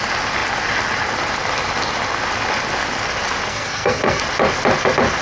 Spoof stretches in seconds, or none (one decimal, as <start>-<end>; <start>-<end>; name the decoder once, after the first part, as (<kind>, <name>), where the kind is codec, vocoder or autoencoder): 3.5-4.2 (codec, SNAC)

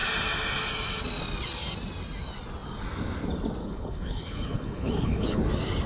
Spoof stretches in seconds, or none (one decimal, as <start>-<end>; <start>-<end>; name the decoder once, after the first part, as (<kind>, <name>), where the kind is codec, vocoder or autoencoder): 3.6-5.4 (codec, HILCodec)

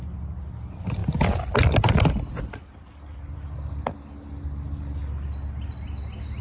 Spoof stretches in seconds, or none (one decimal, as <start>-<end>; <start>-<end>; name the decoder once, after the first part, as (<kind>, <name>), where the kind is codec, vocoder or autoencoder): none

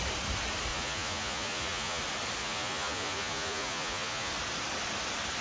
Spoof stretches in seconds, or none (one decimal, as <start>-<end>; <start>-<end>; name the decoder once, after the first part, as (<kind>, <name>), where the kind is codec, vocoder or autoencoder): 0.7-2.0 (vocoder, Vocos); 2.4-4.3

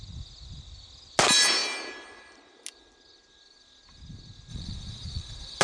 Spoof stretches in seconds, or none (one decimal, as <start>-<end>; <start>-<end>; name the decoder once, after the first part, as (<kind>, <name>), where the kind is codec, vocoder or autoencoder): 4.5-5.6 (vocoder, Vocos)

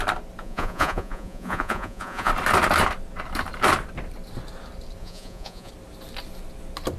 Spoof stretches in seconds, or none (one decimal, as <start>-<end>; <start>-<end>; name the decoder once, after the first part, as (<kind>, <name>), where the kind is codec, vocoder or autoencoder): 0.4-2.3 (vocoder, Vocos); 5.0-5.7

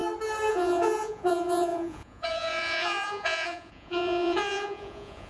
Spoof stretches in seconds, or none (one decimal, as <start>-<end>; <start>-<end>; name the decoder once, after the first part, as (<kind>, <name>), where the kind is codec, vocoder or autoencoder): 0.5-5.3 (vocoder, Vocos)